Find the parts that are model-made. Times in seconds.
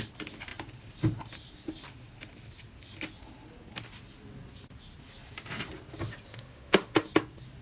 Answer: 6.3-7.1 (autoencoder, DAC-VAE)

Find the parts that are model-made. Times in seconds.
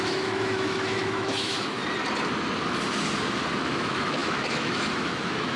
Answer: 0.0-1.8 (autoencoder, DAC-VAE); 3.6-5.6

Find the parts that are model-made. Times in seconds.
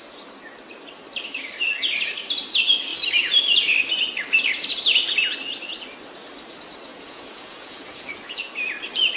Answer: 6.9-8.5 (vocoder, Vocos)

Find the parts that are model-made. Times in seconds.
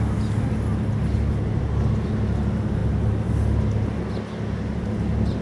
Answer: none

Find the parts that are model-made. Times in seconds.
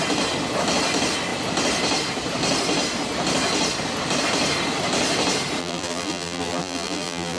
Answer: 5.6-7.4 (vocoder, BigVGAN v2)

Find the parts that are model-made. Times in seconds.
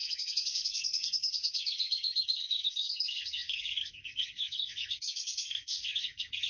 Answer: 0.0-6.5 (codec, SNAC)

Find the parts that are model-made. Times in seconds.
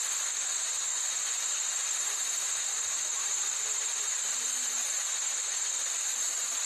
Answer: 0.5-2.6 (vocoder, BigVGAN v2); 3.2-5.6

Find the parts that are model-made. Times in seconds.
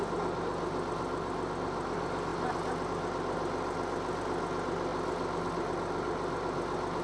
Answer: none